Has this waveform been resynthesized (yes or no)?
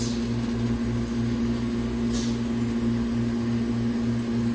no